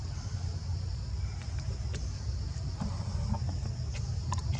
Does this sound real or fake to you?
real